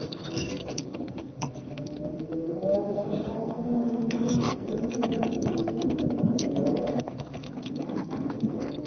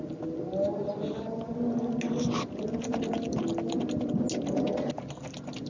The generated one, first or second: first